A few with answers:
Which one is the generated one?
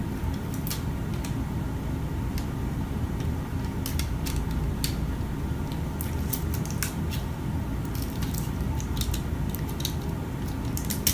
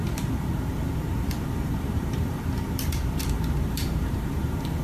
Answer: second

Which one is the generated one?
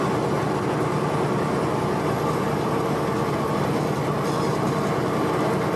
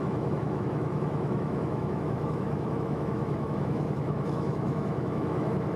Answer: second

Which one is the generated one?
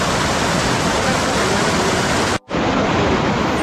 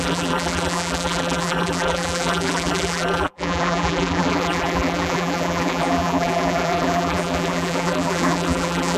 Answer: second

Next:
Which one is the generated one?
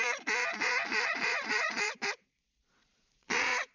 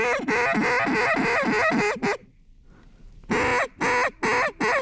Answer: first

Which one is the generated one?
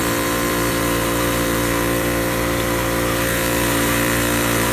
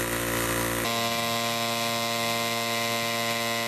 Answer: first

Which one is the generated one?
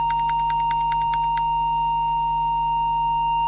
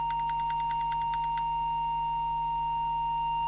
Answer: first